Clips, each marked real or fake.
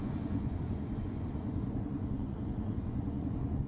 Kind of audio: fake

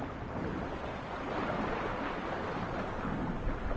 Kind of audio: real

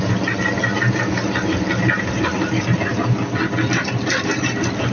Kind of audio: real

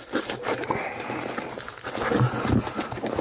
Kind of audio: real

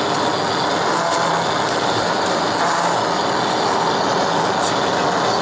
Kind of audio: real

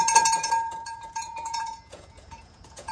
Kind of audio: fake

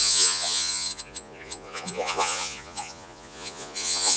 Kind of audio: fake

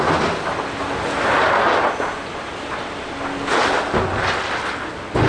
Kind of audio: real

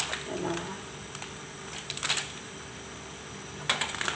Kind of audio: real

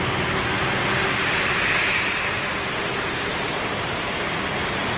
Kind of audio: real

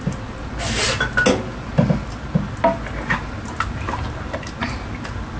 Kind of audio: real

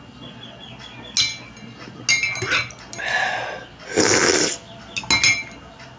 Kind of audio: real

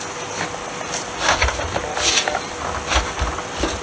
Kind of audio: real